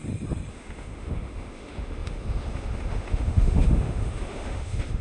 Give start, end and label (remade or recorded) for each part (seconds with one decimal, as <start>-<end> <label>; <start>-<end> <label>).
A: 0.0-0.5 recorded; 0.5-5.0 remade